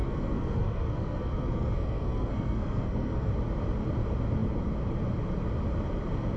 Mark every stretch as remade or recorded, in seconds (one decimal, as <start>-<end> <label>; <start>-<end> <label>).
0.0-3.3 remade; 3.3-6.4 recorded